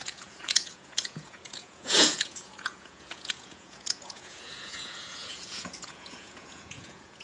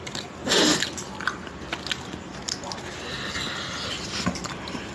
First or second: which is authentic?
second